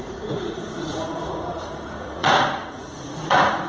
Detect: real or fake fake